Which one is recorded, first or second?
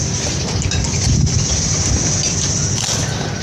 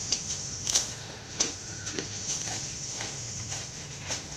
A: first